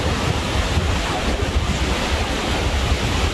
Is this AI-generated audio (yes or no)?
no